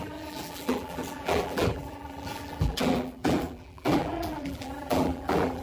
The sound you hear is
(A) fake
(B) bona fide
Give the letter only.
A